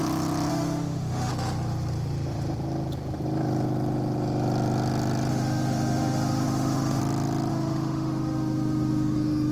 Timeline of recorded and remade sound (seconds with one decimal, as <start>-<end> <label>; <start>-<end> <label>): 0.0-0.5 recorded; 0.5-1.3 remade; 1.3-5.3 recorded; 5.3-7.0 remade; 7.0-7.5 recorded; 7.5-9.5 remade